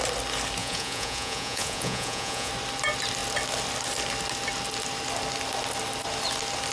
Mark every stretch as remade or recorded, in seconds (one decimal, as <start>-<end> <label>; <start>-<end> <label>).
0.0-0.6 recorded; 0.6-2.5 remade; 2.5-6.7 recorded